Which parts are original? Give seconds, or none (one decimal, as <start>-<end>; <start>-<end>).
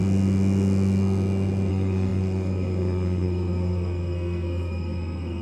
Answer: 0.0-1.7